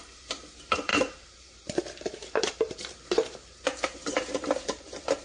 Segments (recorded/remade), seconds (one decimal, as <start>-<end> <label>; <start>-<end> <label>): 0.0-5.2 remade